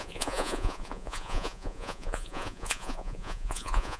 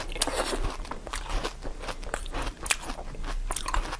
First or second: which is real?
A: second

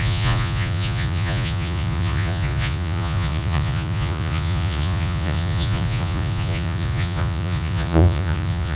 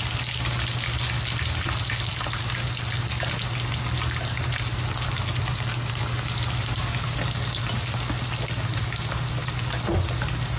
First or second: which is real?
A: second